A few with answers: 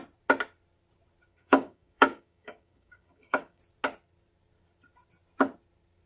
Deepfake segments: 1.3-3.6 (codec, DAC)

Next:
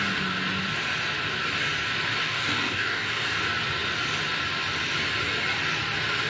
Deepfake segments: 2.2-3.4 (codec, DAC)

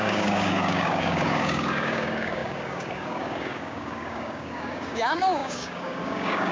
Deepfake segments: 0.0-6.5 (codec, DAC)

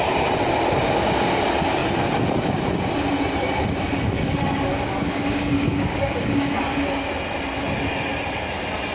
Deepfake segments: 4.7-7.1 (codec, DAC)

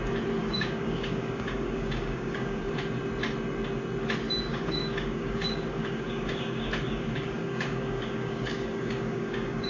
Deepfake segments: 0.4-2.7 (codec, DAC); 4.5-9.7

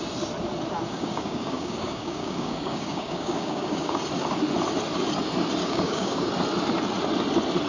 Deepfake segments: 0.9-4.0 (codec, DAC); 5.6-6.3